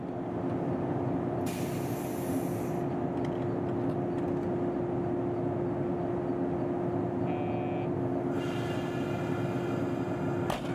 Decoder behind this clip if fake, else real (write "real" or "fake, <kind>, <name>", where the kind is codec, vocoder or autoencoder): real